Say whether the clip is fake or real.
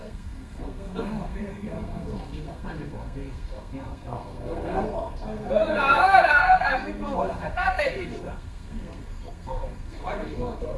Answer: fake